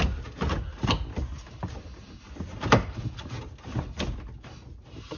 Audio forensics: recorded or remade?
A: recorded